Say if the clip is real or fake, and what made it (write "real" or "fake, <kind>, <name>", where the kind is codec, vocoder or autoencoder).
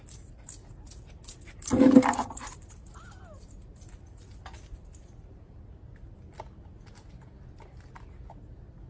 real